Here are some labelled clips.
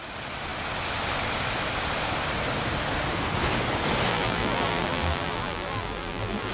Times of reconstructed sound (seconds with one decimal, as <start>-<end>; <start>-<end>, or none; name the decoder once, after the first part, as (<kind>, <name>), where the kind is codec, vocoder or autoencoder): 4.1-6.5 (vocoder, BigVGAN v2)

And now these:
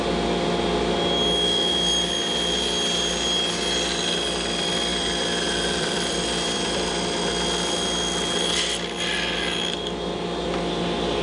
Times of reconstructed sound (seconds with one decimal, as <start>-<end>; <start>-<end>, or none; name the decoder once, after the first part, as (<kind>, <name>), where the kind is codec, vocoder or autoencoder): 4.9-6.9 (vocoder, BigVGAN v2)

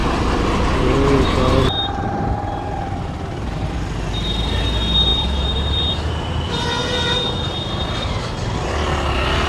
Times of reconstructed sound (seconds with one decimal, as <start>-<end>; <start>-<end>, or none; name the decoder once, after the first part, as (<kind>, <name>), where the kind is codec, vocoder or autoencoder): 5.1-6.1 (vocoder, BigVGAN v2)

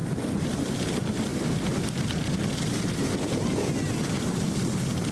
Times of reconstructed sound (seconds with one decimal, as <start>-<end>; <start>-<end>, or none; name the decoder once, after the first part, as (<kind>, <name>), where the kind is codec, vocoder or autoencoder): 0.0-0.8 (vocoder, BigVGAN v2)